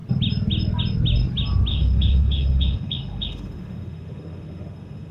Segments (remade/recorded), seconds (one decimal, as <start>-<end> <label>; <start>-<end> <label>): 0.0-1.7 recorded; 1.7-5.1 remade